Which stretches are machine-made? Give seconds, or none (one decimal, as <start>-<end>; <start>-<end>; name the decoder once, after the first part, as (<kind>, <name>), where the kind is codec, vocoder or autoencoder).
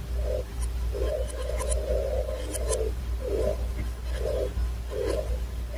none